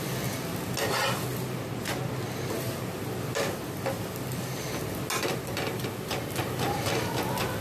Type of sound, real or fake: real